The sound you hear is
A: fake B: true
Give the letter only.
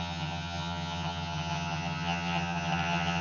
A